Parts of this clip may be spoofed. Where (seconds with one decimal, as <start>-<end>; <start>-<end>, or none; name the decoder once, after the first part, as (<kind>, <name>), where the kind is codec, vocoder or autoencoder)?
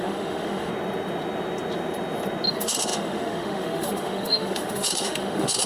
0.0-0.7 (autoencoder, DAC-VAE); 2.5-5.7